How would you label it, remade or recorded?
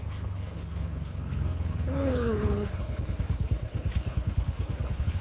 remade